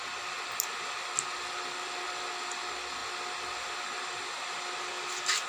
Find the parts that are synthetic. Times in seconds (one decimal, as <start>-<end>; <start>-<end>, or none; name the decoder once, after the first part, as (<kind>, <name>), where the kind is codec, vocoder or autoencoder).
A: none

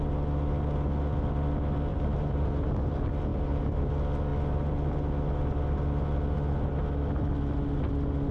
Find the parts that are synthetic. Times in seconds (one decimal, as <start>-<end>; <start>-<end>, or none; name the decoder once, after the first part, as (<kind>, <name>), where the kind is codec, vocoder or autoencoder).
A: 1.9-2.8 (vocoder, BigVGAN v2); 3.3-3.9

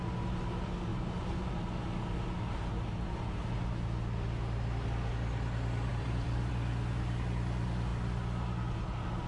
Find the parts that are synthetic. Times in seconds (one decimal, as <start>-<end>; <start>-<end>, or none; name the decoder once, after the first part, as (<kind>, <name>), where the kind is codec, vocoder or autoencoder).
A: 0.9-1.5 (vocoder, BigVGAN v2); 5.9-6.5

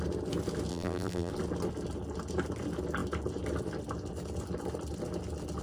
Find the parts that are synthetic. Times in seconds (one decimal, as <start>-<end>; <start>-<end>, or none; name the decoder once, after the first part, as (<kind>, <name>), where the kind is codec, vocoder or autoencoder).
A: 0.7-1.3 (vocoder, BigVGAN v2)

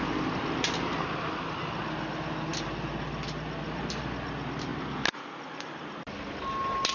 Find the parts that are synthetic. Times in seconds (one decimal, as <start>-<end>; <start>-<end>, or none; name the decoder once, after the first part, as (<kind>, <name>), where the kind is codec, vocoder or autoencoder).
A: none

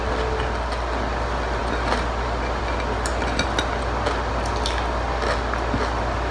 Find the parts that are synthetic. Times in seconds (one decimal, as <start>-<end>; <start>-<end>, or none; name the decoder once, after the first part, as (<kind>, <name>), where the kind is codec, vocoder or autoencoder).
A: none

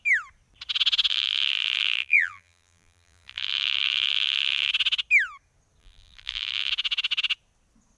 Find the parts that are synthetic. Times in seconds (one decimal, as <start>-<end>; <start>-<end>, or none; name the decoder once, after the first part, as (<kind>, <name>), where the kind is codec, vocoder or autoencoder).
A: 1.1-4.7 (vocoder, BigVGAN v2); 5.8-6.7

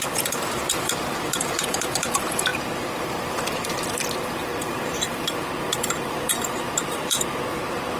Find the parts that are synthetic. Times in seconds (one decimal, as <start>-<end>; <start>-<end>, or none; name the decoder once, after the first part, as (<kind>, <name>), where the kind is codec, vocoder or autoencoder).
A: 0.0-8.0 (vocoder, BigVGAN v2)